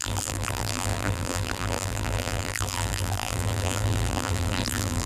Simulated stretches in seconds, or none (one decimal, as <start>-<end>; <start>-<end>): 0.0-5.1